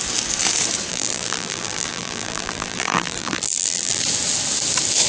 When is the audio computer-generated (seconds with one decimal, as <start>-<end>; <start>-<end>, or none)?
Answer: 0.9-4.0